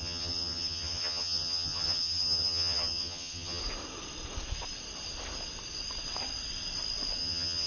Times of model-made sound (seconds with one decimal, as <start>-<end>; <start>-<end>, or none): 0.0-3.6; 7.2-7.7